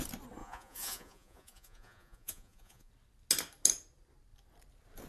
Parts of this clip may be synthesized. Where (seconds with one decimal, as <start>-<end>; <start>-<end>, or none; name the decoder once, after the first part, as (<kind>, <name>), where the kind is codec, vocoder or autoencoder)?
0.4-2.9 (vocoder, Vocos)